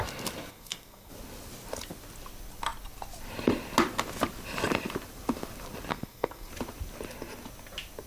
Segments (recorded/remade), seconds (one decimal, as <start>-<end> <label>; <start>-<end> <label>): 0.0-0.5 recorded; 0.5-1.1 remade; 1.1-5.9 recorded; 5.9-6.5 remade; 6.5-8.1 recorded